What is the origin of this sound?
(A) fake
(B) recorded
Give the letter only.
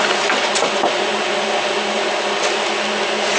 B